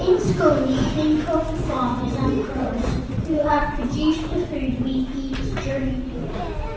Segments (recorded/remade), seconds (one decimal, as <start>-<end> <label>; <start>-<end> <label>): 0.0-1.9 recorded; 1.9-3.8 remade; 3.8-6.8 recorded